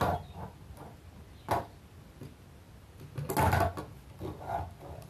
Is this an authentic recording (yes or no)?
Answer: yes